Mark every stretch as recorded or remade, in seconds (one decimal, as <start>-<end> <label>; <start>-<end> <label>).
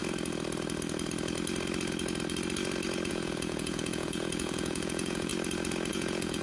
0.0-3.1 recorded; 3.1-5.3 remade; 5.3-5.9 recorded; 5.9-6.4 remade